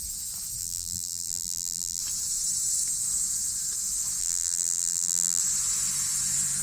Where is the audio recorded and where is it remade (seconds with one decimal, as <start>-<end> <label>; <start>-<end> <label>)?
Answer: 0.0-0.6 recorded; 0.6-2.0 remade; 2.0-4.2 recorded; 4.2-5.4 remade; 5.4-6.6 recorded